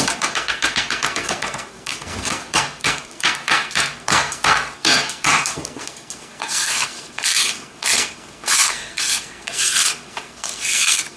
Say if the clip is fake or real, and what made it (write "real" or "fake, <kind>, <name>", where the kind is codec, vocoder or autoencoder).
fake, codec, SNAC